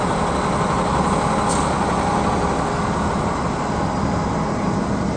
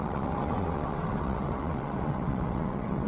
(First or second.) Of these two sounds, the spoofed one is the second